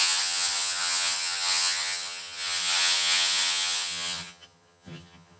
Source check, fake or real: fake